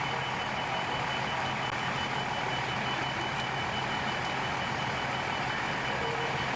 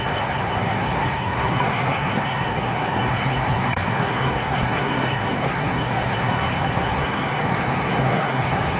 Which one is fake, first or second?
second